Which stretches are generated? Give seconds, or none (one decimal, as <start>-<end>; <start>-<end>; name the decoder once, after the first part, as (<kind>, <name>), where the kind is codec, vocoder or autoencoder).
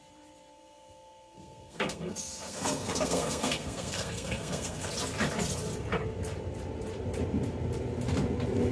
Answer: 0.5-4.9 (codec, SNAC)